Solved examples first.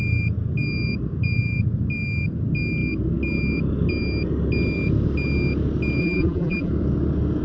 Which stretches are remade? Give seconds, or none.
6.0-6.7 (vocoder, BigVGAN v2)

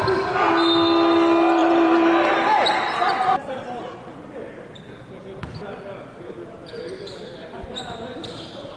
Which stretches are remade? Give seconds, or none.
1.6-4.8 (vocoder, BigVGAN v2)

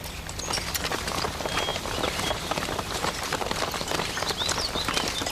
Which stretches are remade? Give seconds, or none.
1.7-3.6 (vocoder, BigVGAN v2)

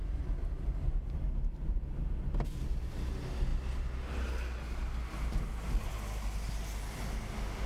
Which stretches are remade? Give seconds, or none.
none

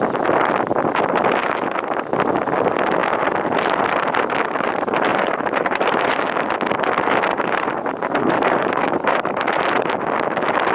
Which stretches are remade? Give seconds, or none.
5.1-6.1 (vocoder, BigVGAN v2); 7.3-9.5

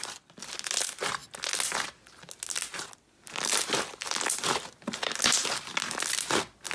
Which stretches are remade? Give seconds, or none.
none